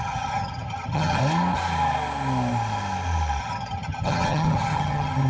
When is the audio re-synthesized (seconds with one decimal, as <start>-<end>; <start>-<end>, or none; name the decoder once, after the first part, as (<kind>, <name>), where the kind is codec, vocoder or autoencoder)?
0.0-1.2 (vocoder, HiFi-GAN); 3.4-5.3